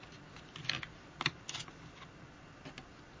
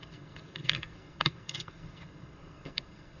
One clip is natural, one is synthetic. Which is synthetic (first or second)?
second